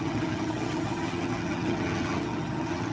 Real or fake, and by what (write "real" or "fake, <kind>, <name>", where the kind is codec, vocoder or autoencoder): fake, vocoder, HiFi-GAN